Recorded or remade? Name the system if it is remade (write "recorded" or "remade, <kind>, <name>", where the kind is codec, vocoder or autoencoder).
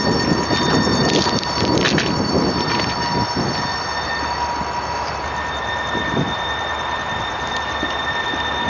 recorded